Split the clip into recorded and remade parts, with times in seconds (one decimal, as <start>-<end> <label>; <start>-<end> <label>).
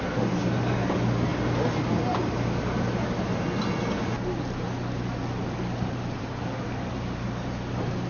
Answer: 0.0-8.1 recorded